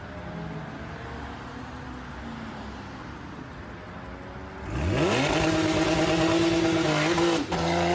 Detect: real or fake real